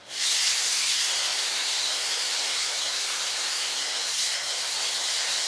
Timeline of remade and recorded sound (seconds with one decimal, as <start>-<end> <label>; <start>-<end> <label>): 0.0-5.5 remade